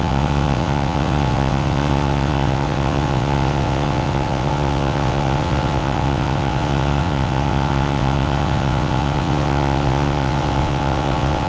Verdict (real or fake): fake